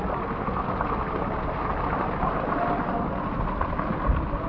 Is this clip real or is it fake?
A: real